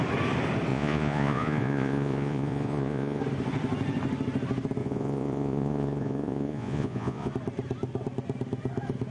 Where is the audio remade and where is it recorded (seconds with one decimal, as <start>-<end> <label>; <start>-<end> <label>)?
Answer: 0.0-0.7 recorded; 0.7-3.2 remade; 3.2-4.8 recorded; 4.8-7.3 remade; 7.3-9.1 recorded